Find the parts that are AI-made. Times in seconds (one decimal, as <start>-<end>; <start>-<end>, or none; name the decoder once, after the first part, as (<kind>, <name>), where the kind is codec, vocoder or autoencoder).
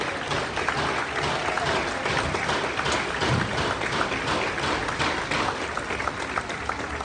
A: none